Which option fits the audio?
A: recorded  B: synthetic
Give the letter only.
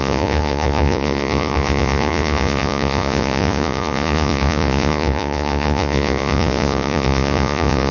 B